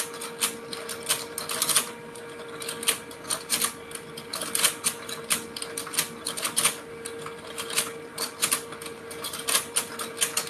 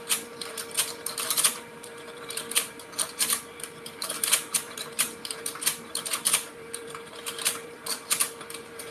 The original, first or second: first